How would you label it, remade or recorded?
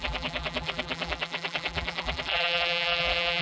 remade